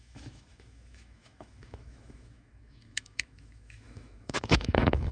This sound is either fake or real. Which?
fake